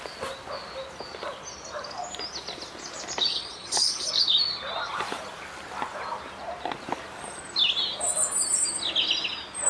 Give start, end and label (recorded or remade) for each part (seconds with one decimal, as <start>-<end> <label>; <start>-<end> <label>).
0.0-3.3 recorded; 3.3-4.1 remade; 4.1-9.7 recorded